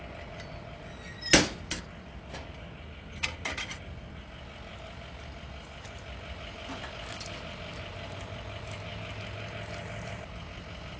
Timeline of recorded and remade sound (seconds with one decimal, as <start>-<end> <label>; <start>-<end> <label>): 0.0-11.0 recorded